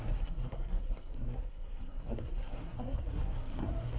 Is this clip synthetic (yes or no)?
yes